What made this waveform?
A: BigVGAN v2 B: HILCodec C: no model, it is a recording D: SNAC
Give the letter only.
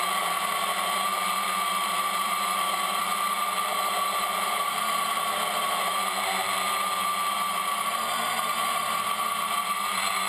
A